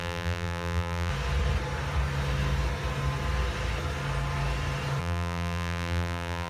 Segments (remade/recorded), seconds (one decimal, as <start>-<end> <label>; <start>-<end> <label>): 0.0-1.1 remade; 1.1-5.0 recorded; 5.0-6.5 remade